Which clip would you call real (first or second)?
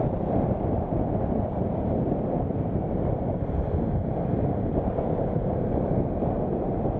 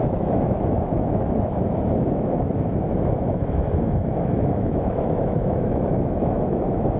first